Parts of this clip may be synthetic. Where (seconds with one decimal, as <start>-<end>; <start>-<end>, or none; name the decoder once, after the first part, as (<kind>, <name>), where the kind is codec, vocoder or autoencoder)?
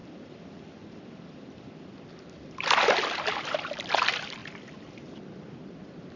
0.0-3.7 (vocoder, BigVGAN v2); 4.4-5.8